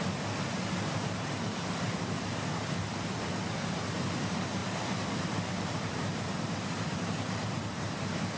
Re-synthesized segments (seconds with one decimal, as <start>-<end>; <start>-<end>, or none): 0.0-8.4